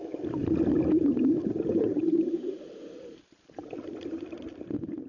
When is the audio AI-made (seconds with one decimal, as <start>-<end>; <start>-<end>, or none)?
none